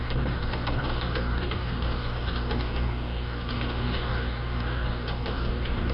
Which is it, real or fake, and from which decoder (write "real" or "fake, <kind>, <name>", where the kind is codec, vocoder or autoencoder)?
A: fake, codec, DAC